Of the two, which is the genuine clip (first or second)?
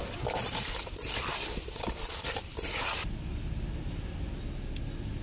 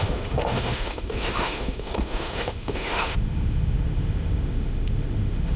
first